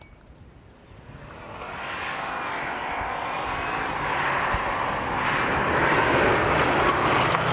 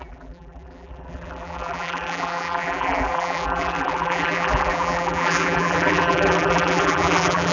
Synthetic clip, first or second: second